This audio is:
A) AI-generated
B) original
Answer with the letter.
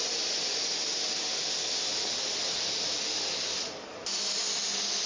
B